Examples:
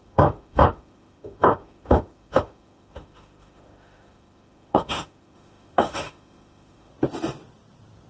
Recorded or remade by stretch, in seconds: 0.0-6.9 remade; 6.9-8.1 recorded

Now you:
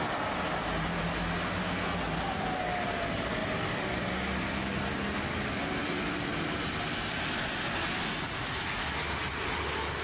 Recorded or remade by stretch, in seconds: 0.0-3.4 recorded; 3.4-4.1 remade; 4.1-5.8 recorded; 5.8-6.3 remade; 6.3-10.0 recorded

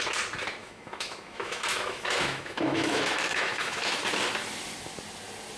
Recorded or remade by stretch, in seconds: 0.0-0.6 recorded; 0.6-4.0 remade; 4.0-5.6 recorded